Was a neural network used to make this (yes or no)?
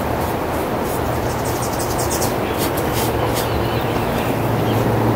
no